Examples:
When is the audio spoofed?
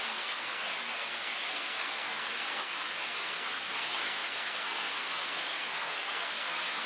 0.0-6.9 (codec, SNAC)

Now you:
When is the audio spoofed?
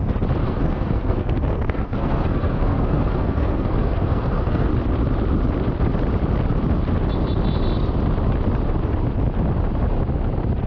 0.4-4.7 (codec, SNAC)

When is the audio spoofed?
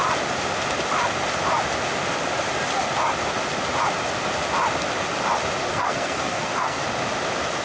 5.7-6.8 (codec, SNAC)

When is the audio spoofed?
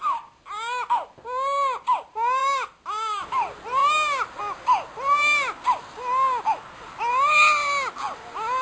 none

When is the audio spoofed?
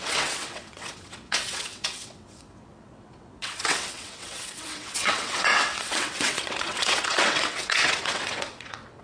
0.0-9.0 (vocoder, WaveNeXt)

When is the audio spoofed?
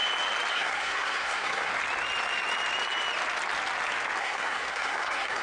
0.5-1.7 (codec, SNAC); 4.2-5.4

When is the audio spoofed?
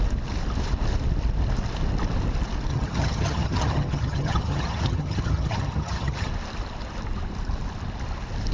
2.7-6.3 (vocoder, HiFi-GAN)